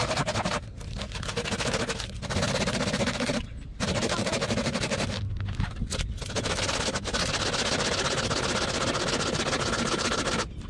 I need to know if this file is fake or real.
real